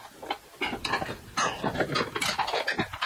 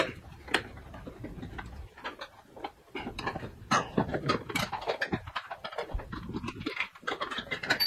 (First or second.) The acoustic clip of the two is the first